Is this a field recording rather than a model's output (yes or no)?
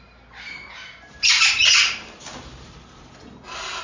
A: yes